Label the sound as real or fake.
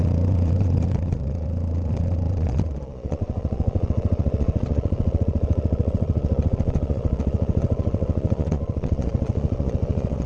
fake